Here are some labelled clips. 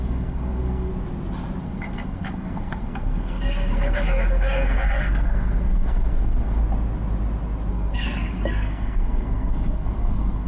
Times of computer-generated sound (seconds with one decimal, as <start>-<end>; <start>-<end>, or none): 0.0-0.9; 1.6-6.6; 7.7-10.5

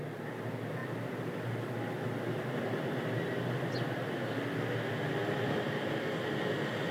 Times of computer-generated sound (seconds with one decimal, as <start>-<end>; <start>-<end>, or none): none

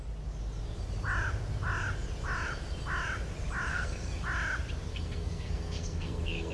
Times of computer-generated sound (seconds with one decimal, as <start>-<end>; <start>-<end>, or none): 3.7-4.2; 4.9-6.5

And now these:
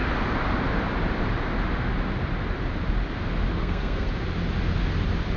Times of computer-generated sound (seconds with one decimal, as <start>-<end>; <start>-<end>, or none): 3.5-4.1

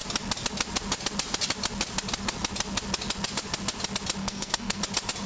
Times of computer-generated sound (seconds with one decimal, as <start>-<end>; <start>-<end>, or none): 4.2-4.8